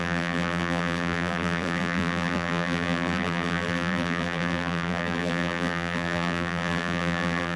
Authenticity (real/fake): fake